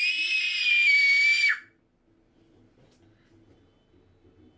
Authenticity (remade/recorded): recorded